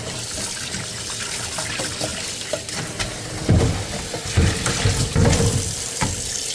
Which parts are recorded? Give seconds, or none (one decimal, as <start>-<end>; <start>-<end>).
0.0-6.5